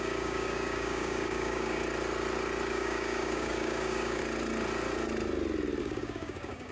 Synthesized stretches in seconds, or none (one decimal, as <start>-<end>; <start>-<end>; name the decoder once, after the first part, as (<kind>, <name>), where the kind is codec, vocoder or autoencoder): 0.0-1.8 (codec, DAC); 2.7-4.2; 5.8-6.7